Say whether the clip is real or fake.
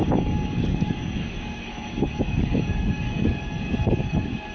fake